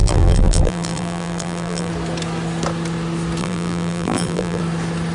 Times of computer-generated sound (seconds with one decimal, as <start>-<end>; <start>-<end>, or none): 0.0-1.9; 3.4-4.6